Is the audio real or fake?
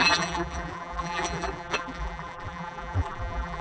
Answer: fake